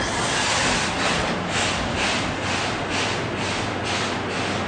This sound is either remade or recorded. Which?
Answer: recorded